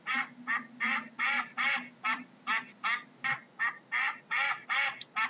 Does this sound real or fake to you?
real